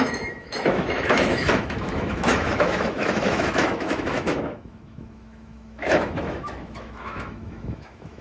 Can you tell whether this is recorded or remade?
remade